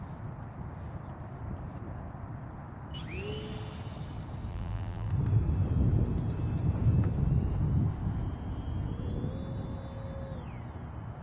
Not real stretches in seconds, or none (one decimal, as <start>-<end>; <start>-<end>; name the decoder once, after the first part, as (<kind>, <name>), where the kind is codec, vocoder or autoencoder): 4.5-5.1 (vocoder, BigVGAN v2)